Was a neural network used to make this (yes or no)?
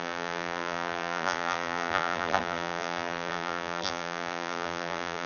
yes